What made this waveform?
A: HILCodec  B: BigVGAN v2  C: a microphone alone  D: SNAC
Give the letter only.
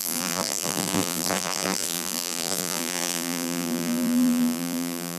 B